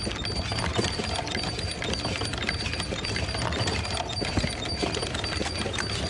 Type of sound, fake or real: real